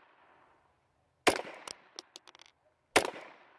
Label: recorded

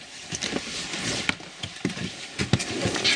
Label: recorded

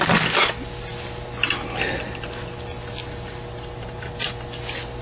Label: recorded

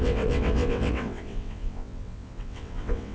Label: remade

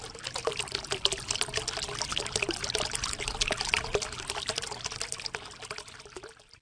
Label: recorded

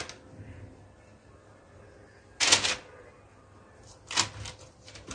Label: recorded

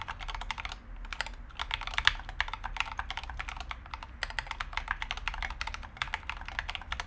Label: recorded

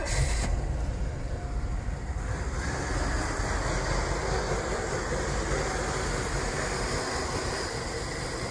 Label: recorded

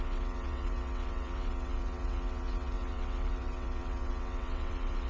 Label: remade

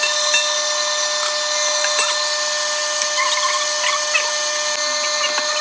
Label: recorded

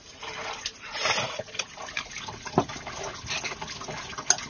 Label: recorded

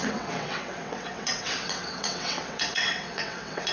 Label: remade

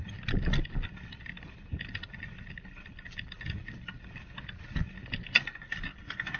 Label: recorded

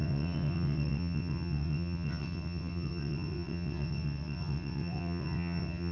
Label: remade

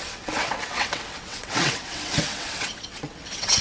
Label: remade